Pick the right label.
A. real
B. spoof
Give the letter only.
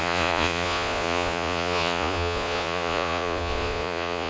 B